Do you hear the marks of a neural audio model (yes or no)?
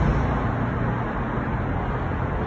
no